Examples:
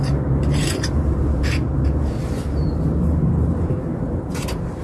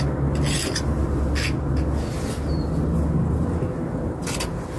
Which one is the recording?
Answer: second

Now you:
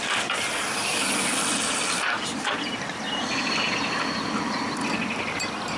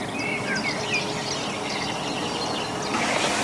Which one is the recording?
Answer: second